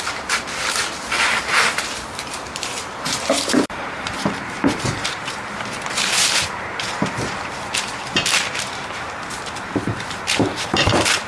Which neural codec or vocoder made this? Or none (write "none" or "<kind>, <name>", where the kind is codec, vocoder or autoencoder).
vocoder, BigVGAN v2